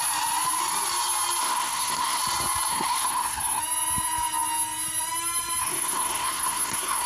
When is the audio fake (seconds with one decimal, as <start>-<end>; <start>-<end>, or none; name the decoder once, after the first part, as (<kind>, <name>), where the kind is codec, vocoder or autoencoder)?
1.4-2.2 (codec, SNAC); 2.7-3.6; 5.6-7.1